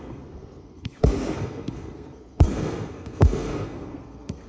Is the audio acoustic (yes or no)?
no